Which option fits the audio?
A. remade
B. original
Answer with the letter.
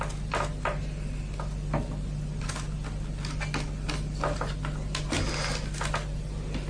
B